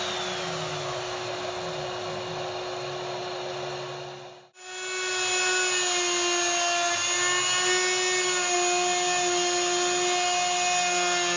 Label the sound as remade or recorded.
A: recorded